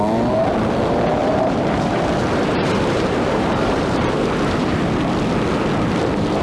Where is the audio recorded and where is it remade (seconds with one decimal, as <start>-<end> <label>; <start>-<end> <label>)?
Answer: 0.0-1.2 recorded; 1.2-4.9 remade; 4.9-6.4 recorded